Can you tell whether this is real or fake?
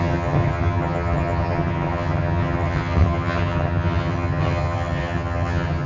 fake